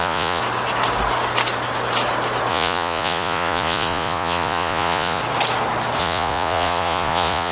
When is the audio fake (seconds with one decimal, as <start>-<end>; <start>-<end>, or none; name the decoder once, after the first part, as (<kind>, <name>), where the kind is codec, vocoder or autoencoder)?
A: 0.0-0.4 (vocoder, Vocos); 2.5-5.2; 6.0-7.5